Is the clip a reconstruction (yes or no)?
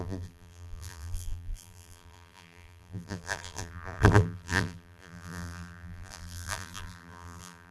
yes